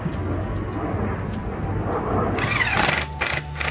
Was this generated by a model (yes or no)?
no